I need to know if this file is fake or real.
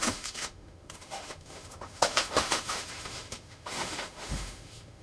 fake